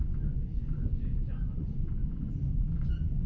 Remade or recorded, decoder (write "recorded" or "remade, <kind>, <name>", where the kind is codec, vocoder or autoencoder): remade, vocoder, Vocos